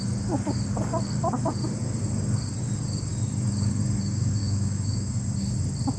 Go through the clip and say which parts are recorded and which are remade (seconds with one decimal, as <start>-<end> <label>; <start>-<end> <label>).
0.0-4.4 recorded; 4.4-5.1 remade; 5.1-6.0 recorded